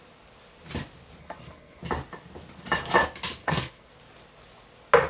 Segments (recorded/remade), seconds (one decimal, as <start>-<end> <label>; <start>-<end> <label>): 0.0-1.2 recorded; 1.2-1.8 remade; 1.8-3.4 recorded; 3.4-3.9 remade; 3.9-5.1 recorded